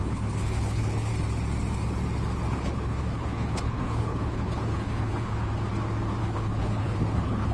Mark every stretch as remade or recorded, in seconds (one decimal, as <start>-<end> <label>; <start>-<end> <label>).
0.0-1.1 remade; 1.1-2.5 recorded; 2.5-5.5 remade; 5.5-6.2 recorded; 6.2-7.5 remade